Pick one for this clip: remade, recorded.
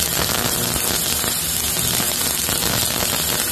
recorded